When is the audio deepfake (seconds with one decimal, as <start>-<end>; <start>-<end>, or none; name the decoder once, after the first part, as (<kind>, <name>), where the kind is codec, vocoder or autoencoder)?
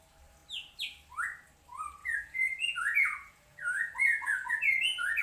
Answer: 2.0-5.2 (vocoder, Vocos)